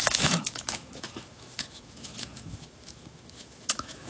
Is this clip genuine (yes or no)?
no